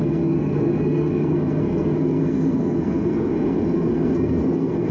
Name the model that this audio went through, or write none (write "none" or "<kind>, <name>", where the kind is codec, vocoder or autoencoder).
codec, SNAC